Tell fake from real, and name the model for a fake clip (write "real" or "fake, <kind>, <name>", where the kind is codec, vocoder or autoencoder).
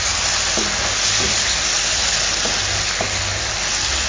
real